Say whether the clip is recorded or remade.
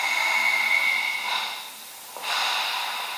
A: recorded